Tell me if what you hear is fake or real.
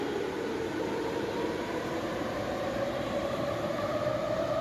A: fake